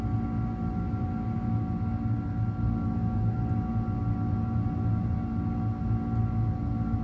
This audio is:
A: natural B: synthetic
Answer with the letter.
A